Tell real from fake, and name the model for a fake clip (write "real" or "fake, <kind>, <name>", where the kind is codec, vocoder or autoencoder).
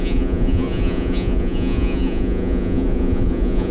fake, vocoder, Vocos